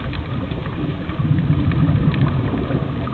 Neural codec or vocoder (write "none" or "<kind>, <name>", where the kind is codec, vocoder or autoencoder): vocoder, BigVGAN v2